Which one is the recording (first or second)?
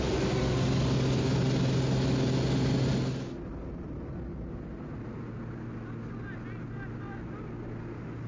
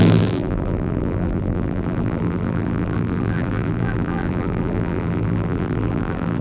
first